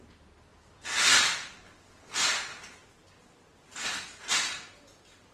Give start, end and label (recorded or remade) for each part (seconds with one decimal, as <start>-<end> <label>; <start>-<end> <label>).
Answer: 0.0-5.3 recorded